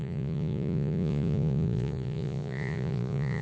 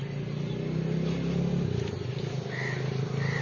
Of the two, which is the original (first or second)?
second